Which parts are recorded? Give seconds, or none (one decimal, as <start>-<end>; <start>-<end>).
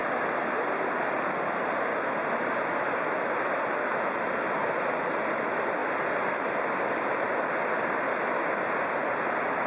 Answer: 0.0-9.7